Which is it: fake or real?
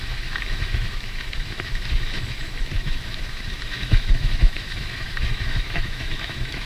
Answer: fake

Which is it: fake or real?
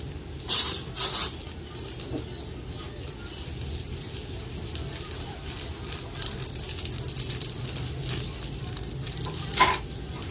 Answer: real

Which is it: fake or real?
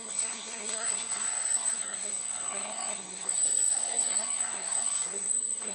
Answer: fake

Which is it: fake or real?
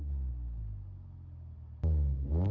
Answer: real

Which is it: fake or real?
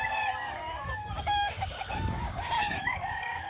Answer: fake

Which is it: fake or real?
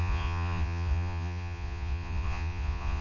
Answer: fake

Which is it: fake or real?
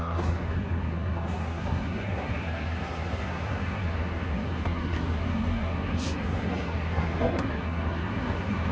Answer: fake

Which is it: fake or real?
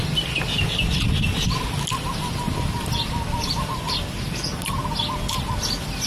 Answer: real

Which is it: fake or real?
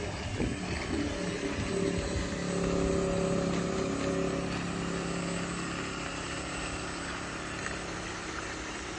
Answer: real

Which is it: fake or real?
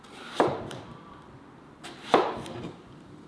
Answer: fake